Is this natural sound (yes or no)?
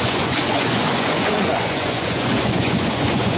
no